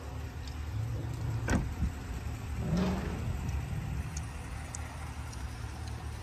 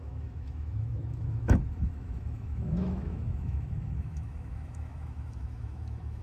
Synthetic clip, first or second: second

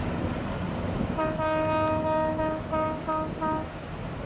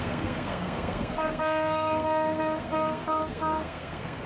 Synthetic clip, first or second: second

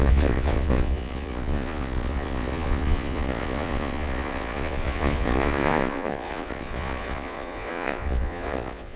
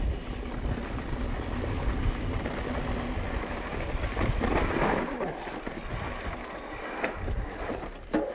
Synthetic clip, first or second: first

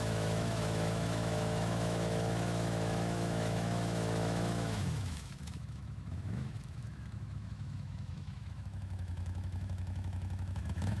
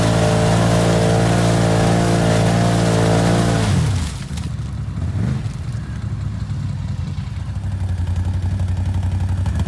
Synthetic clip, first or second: first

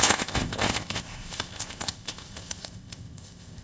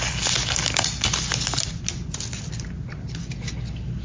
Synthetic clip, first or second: first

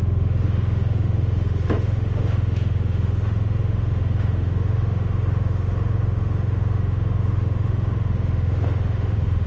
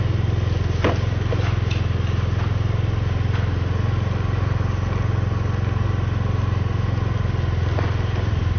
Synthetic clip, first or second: first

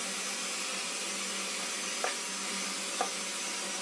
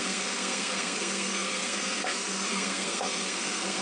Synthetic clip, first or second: second